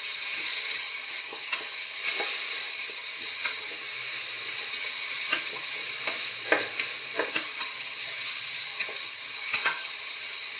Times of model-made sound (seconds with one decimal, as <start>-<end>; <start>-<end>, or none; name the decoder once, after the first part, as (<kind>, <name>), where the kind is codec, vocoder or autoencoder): 0.0-2.0 (vocoder, HiFi-GAN); 2.7-3.7; 4.7-5.8; 7.3-10.6